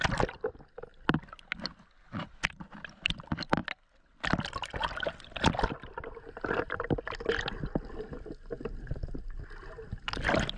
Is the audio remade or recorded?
recorded